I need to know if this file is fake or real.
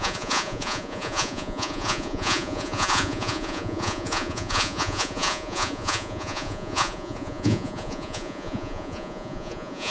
fake